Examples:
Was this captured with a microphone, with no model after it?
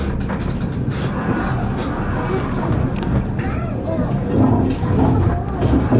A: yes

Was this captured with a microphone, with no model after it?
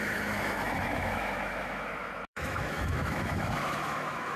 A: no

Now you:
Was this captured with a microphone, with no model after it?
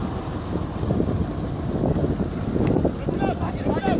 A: yes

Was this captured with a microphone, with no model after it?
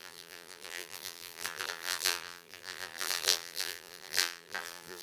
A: no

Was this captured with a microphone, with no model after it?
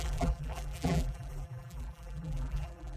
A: no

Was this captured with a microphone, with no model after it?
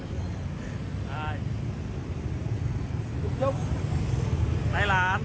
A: yes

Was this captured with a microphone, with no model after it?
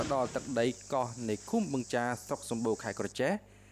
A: no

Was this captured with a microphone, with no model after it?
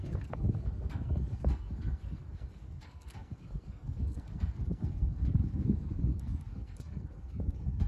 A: no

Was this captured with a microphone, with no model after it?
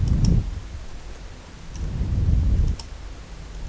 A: yes